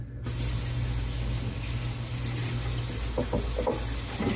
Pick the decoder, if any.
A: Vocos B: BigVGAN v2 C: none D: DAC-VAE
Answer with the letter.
C